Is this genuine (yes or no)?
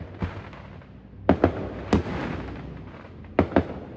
yes